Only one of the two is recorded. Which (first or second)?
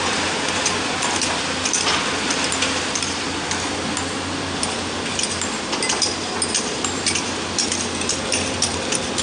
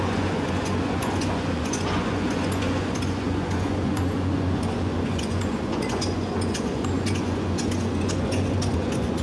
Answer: first